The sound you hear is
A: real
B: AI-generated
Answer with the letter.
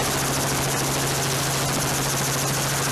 A